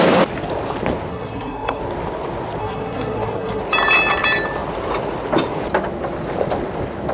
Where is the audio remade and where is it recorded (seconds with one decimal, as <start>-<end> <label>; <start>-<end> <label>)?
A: 0.0-1.1 recorded; 1.1-1.8 remade; 1.8-2.6 recorded; 2.6-3.6 remade; 3.6-7.1 recorded